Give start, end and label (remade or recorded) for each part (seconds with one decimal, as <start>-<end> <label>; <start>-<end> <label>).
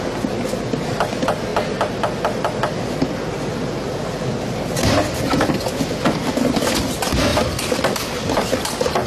0.0-9.1 recorded